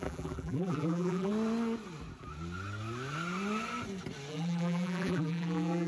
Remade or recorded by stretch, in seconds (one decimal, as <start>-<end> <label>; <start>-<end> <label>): 0.0-1.3 remade; 1.3-4.3 recorded; 4.3-5.9 remade